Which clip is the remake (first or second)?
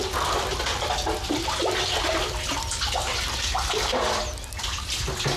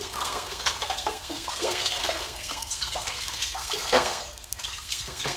second